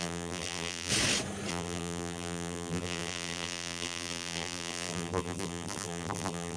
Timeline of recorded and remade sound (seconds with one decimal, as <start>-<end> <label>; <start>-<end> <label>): 0.0-0.9 remade; 0.9-1.5 recorded; 1.5-6.6 remade

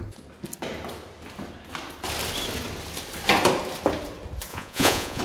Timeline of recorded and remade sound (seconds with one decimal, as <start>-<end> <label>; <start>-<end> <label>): 0.0-4.5 recorded; 4.5-5.2 remade

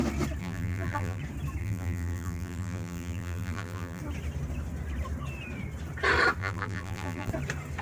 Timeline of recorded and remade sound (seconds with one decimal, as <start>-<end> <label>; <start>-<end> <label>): 0.0-0.4 recorded; 0.4-1.2 remade; 1.2-1.6 recorded; 1.6-4.0 remade; 4.0-6.4 recorded; 6.4-7.3 remade; 7.3-7.8 recorded

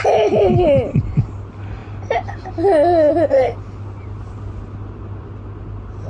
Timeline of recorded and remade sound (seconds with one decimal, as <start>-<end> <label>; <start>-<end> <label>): 0.0-6.1 recorded

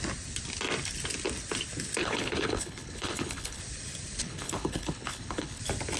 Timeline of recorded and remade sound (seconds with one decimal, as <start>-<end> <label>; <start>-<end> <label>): 0.0-2.0 recorded; 2.0-3.6 remade; 3.6-4.2 recorded; 4.2-5.6 remade; 5.6-6.0 recorded